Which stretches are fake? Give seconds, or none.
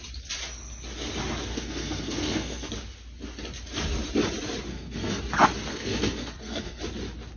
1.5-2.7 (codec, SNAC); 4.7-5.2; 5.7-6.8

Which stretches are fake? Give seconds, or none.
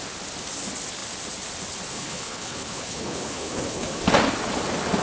1.9-4.0 (codec, HILCodec)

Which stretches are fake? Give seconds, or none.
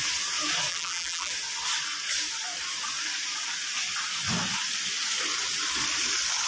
0.7-1.3 (vocoder, BigVGAN v2)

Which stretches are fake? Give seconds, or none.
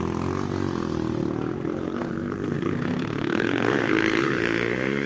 1.8-5.1 (codec, SNAC)